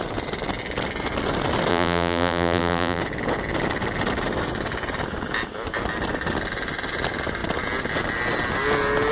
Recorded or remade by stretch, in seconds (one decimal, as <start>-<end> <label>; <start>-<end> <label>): 0.0-1.7 recorded; 1.7-3.0 remade; 3.0-9.1 recorded

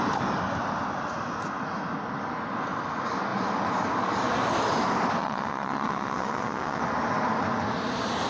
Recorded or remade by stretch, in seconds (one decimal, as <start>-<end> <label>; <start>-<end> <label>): 0.0-5.2 recorded; 5.2-6.8 remade; 6.8-8.3 recorded

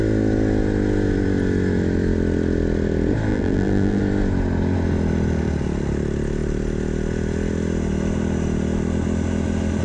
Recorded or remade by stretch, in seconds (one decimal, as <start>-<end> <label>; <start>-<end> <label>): 0.0-3.3 recorded; 3.3-4.0 remade; 4.0-9.8 recorded

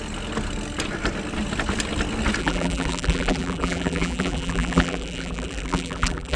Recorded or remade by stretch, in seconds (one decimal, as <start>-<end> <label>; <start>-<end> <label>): 0.0-2.4 recorded; 2.4-6.4 remade

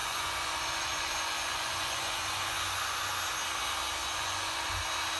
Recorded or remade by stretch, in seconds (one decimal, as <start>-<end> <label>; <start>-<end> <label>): 0.0-3.1 remade; 3.1-4.0 recorded; 4.0-4.8 remade; 4.8-5.2 recorded

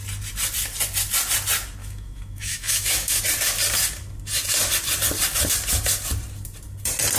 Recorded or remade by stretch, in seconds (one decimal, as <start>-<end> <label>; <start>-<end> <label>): 0.0-1.8 recorded; 1.8-3.2 remade; 3.2-7.2 recorded